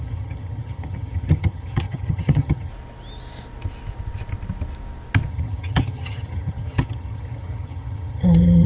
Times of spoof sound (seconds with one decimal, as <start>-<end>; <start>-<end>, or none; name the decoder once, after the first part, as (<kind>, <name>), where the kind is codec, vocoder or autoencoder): 0.0-2.7 (vocoder, HiFi-GAN); 5.3-8.7